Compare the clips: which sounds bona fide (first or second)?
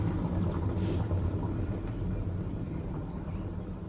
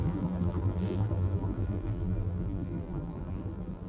first